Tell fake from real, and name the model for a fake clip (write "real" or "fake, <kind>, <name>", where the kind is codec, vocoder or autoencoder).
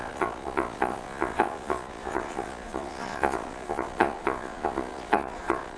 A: fake, vocoder, Vocos